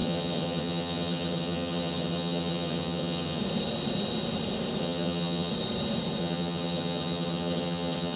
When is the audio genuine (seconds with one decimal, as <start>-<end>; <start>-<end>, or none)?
3.4-4.8; 5.5-6.2